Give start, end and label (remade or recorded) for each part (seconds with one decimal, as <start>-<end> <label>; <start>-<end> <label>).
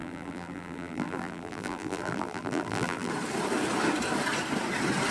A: 0.0-3.1 remade; 3.1-5.1 recorded